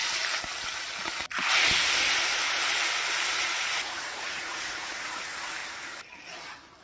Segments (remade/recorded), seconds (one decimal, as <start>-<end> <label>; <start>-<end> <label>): 0.0-3.3 recorded; 3.3-5.6 remade; 5.6-6.8 recorded